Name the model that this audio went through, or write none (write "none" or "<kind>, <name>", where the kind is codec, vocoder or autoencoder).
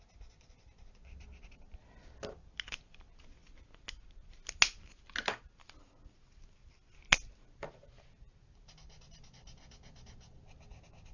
none